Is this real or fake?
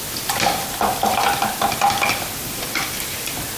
real